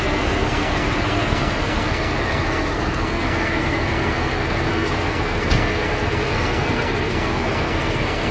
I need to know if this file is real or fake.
fake